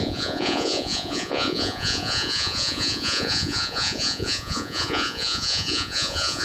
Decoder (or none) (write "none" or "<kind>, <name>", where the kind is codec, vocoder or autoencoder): vocoder, Vocos